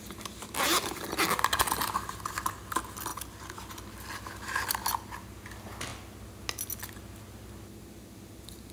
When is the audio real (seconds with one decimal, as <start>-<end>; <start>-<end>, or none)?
0.0-8.7